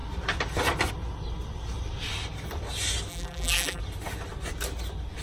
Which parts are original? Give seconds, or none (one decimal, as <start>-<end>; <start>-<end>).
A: 0.0-3.1; 3.8-5.2